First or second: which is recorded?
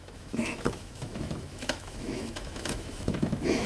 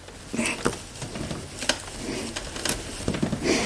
second